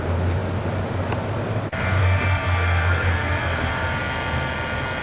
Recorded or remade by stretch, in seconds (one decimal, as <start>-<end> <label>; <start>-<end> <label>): 0.0-2.0 recorded; 2.0-3.7 remade; 3.7-5.0 recorded